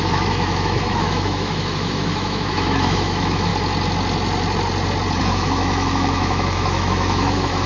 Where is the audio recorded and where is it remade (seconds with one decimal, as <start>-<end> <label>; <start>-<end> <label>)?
0.0-3.5 remade; 3.5-5.2 recorded; 5.2-7.7 remade